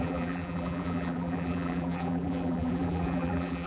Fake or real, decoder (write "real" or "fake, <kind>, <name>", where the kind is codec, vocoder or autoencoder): fake, vocoder, BigVGAN v2